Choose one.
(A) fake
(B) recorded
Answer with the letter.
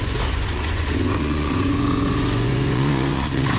A